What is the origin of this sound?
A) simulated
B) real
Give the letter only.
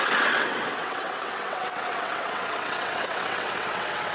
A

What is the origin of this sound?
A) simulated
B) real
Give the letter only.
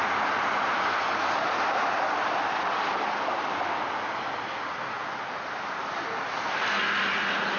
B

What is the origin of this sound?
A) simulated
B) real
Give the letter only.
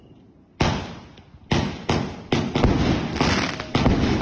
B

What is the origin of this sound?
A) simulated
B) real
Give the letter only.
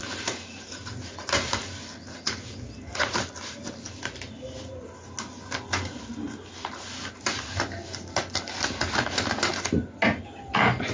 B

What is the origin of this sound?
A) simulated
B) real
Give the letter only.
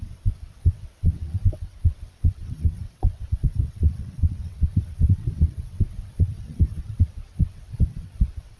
A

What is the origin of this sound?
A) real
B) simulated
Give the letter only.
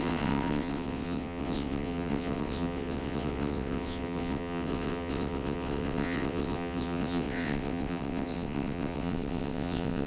B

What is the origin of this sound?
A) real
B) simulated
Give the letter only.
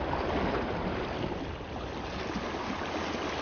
A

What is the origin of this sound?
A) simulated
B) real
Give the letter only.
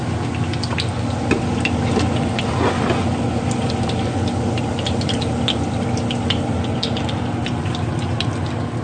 B